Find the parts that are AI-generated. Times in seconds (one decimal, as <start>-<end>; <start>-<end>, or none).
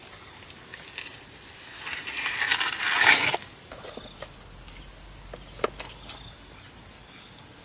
none